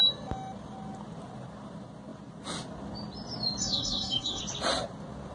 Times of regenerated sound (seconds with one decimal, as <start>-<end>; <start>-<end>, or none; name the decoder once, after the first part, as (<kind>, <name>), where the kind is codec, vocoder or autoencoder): 3.6-4.4 (codec, SNAC)